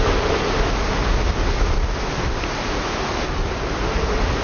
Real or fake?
real